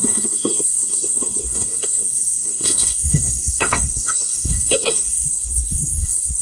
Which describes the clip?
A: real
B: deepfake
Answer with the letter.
B